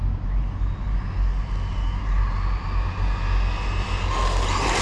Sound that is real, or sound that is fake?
real